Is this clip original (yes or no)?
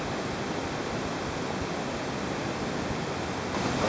yes